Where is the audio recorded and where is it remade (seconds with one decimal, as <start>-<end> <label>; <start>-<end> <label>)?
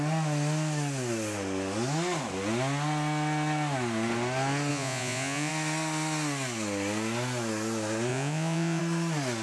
0.0-4.7 recorded; 4.7-5.5 remade; 5.5-8.1 recorded; 8.1-8.8 remade; 8.8-9.4 recorded